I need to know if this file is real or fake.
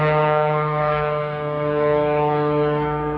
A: fake